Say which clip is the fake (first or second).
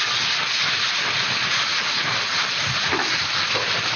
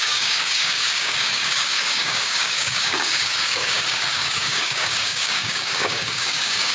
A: second